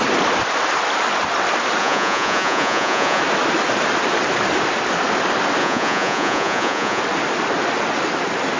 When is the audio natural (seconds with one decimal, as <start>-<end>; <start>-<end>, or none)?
0.0-1.8; 3.2-5.6; 7.0-8.6